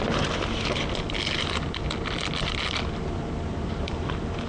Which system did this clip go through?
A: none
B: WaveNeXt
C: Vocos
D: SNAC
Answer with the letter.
A